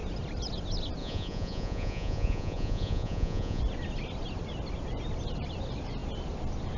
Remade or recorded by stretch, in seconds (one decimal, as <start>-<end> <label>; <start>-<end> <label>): 0.0-1.0 recorded; 1.0-3.6 remade; 3.6-6.8 recorded

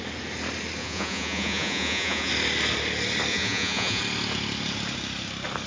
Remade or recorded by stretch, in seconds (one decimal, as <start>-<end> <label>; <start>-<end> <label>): 0.0-0.8 recorded; 0.8-2.3 remade; 2.3-3.3 recorded; 3.3-4.0 remade; 4.0-5.7 recorded